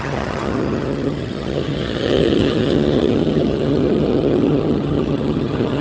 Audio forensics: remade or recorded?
remade